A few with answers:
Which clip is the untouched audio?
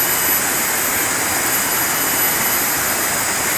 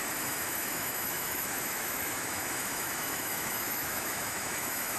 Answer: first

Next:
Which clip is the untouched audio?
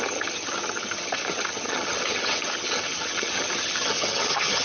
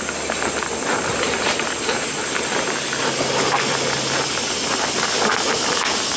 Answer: second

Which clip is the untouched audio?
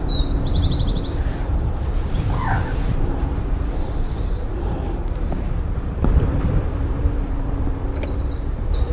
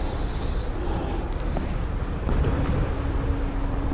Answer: second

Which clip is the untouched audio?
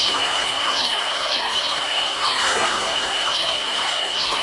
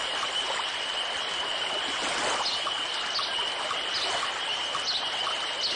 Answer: second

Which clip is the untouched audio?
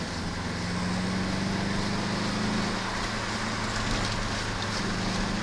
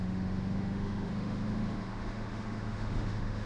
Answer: first